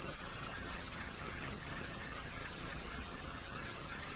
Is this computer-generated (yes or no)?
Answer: yes